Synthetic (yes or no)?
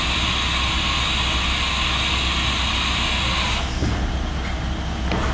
no